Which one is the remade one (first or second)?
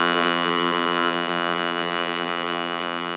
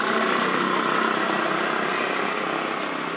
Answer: first